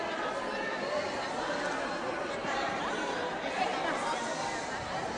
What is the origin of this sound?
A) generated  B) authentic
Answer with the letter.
B